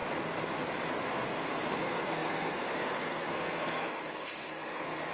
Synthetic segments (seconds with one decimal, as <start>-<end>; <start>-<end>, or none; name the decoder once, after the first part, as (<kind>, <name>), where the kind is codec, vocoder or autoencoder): 0.9-5.1 (codec, SNAC)